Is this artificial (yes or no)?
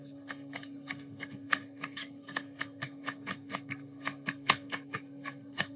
yes